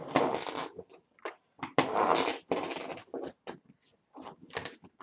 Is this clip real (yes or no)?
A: yes